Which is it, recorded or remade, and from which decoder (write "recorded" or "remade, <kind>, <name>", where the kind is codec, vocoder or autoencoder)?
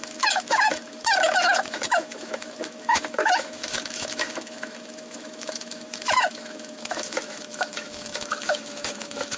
remade, autoencoder, DAC-VAE